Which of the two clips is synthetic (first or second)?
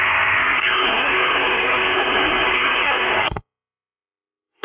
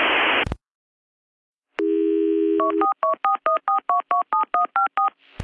first